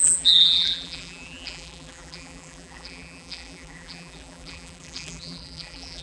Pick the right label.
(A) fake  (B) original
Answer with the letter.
A